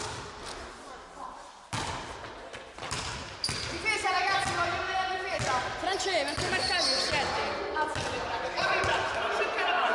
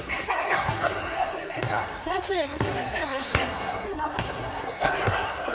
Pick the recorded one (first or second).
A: first